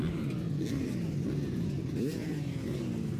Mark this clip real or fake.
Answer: real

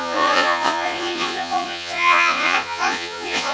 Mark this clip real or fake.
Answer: fake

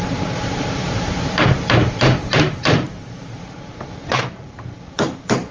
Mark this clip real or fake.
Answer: fake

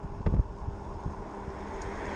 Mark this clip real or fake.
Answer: real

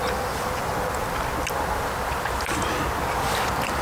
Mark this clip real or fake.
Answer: real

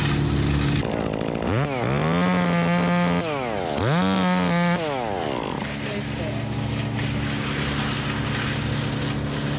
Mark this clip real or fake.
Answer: real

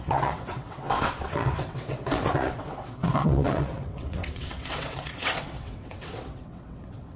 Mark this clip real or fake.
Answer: fake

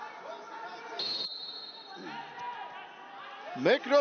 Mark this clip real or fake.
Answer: real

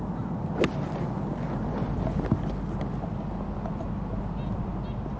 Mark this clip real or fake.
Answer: real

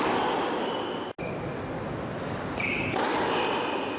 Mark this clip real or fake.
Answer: real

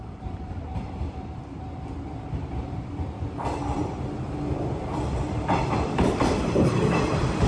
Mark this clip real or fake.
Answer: fake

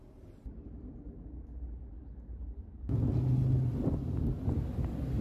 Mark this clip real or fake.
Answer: real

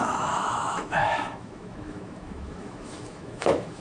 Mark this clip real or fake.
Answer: fake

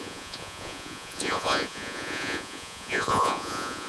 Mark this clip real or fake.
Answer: fake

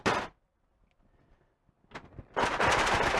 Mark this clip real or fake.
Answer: real